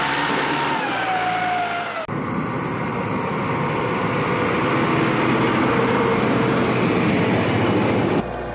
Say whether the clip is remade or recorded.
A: recorded